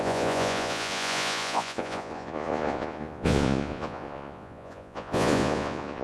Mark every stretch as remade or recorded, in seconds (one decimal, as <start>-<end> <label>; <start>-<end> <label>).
0.0-6.0 remade